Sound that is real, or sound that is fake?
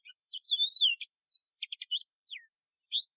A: fake